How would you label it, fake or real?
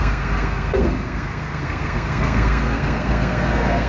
fake